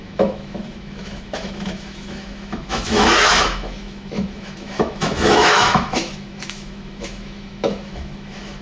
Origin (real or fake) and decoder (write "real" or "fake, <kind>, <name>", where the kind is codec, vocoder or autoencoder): fake, autoencoder, DAC-VAE